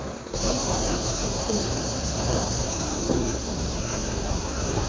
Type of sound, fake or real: fake